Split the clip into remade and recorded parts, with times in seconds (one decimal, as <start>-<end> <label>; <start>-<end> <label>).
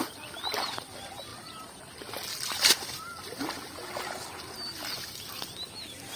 0.0-1.3 recorded; 1.3-1.8 remade; 1.8-6.2 recorded